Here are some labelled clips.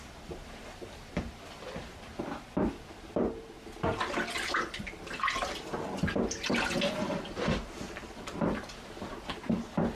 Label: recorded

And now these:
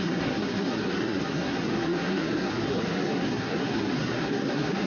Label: remade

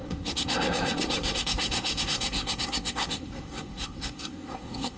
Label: remade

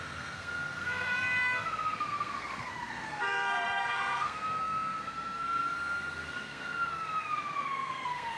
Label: remade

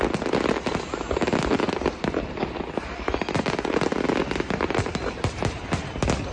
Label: recorded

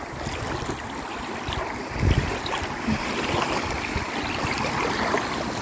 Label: recorded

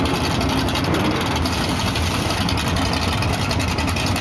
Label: recorded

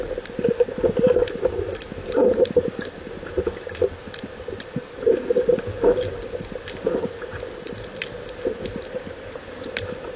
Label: recorded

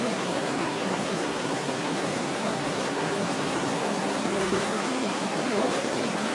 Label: remade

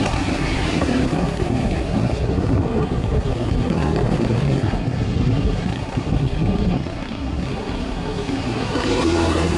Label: remade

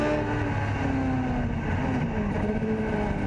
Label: recorded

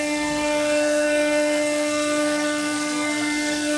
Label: remade